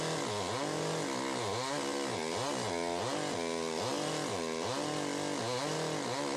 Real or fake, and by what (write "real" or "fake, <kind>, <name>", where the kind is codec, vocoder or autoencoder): real